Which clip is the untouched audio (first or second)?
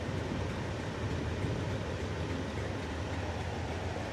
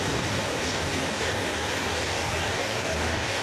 first